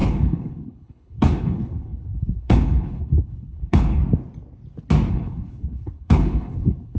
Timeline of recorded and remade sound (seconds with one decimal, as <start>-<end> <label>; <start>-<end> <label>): 0.0-4.0 remade; 4.0-5.1 recorded; 5.1-7.0 remade